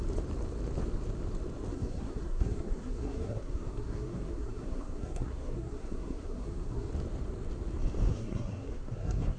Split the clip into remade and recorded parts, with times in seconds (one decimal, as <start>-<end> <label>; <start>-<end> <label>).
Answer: 0.0-1.7 recorded; 1.7-6.9 remade; 6.9-8.1 recorded; 8.1-9.4 remade